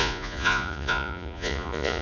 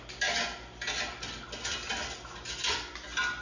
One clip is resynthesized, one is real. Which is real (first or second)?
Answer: second